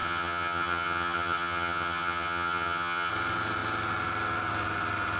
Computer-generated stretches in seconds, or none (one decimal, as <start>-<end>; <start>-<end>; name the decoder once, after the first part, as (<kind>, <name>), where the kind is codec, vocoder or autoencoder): 0.0-3.1 (vocoder, HiFi-GAN)